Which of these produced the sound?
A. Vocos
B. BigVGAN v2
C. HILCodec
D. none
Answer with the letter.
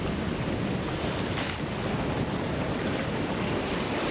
D